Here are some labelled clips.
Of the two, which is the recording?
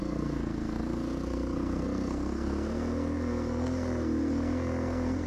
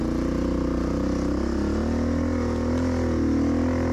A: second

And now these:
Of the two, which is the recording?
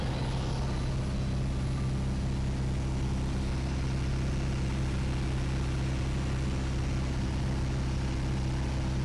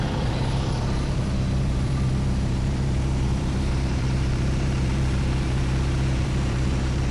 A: first